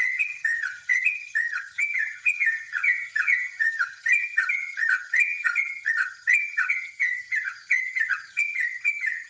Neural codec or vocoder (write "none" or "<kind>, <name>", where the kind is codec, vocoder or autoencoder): vocoder, HiFi-GAN